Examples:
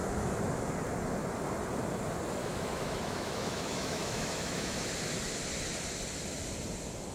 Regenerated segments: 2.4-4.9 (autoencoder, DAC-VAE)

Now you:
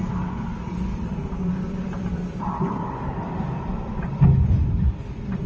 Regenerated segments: 0.9-4.2 (vocoder, BigVGAN v2)

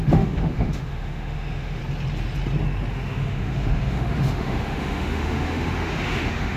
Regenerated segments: 0.0-1.8 (autoencoder, DAC-VAE); 2.9-6.6

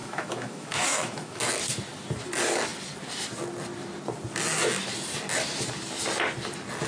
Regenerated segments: 0.0-1.4 (autoencoder, DAC-VAE)